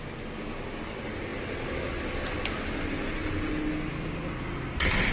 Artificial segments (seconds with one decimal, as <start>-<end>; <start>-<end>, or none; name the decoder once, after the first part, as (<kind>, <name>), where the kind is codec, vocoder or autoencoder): none